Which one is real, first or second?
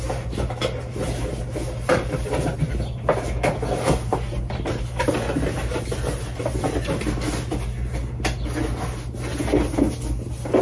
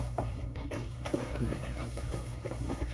first